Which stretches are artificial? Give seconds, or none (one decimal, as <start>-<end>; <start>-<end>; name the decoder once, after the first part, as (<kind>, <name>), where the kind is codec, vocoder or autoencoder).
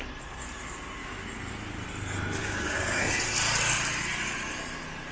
2.4-3.0 (codec, DAC)